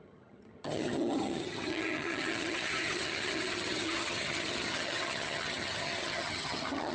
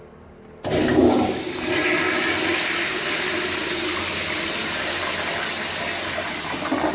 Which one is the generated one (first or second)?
first